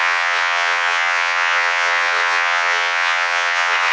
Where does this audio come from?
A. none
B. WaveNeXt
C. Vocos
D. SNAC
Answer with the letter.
B